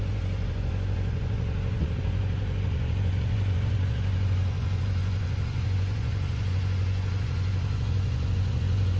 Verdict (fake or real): fake